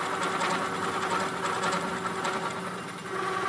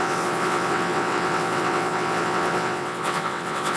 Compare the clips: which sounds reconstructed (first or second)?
second